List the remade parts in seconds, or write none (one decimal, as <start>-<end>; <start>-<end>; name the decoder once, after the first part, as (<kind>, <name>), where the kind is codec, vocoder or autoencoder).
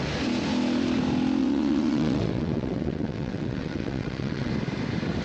1.4-4.5 (vocoder, WaveNeXt)